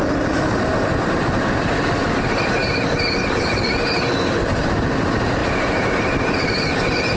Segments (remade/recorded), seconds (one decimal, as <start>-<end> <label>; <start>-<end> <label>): 0.0-7.2 recorded